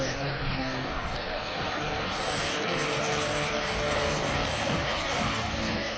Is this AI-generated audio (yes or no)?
yes